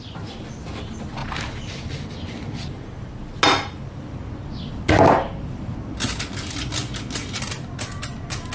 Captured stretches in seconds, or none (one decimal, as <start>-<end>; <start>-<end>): 0.0-8.5